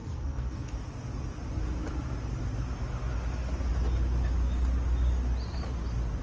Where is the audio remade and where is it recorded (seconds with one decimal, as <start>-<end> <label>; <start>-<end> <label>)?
0.0-0.7 remade; 0.7-6.2 recorded